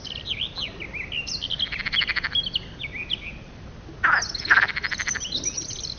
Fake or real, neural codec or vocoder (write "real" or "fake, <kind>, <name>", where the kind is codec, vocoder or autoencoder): real